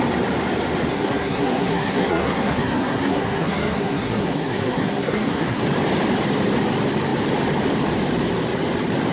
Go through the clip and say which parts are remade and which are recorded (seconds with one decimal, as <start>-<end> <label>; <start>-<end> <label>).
0.0-0.9 recorded; 0.9-5.6 remade; 5.6-9.1 recorded